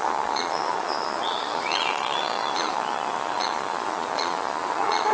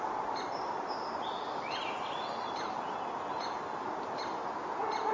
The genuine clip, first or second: second